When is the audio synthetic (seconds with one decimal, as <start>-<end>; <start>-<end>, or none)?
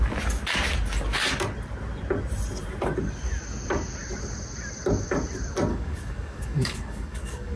5.7-7.6